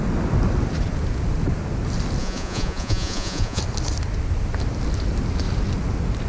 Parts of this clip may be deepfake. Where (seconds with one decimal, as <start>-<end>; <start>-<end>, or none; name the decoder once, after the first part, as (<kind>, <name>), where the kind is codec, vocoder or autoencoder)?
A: 2.2-3.6 (vocoder, Vocos)